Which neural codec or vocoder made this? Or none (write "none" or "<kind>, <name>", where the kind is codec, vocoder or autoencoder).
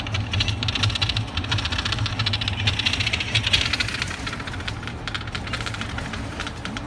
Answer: none